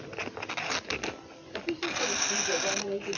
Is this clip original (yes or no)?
yes